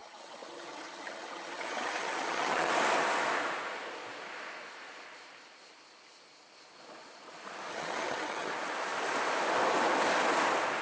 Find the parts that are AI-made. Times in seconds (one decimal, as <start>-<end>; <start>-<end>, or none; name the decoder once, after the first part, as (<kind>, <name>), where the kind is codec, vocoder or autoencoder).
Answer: 0.0-2.7 (vocoder, HiFi-GAN); 7.7-8.5